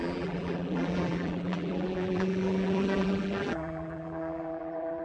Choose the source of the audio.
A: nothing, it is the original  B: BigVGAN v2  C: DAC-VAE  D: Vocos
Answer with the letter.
B